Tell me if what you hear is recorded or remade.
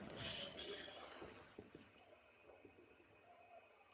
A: remade